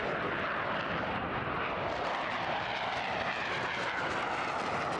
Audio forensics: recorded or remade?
recorded